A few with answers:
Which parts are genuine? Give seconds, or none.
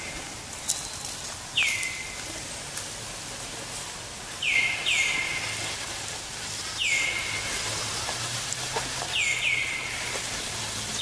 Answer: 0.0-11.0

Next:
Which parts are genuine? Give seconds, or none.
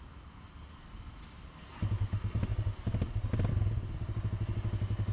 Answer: 0.0-5.1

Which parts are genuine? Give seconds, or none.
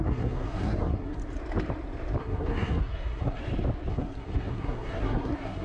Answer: 1.2-2.2; 3.4-3.9